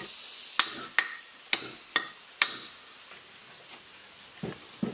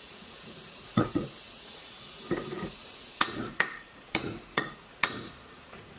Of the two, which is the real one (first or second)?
first